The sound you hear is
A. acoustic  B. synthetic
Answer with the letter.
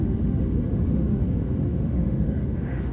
B